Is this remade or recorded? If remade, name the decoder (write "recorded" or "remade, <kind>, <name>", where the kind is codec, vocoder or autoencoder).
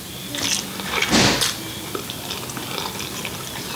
recorded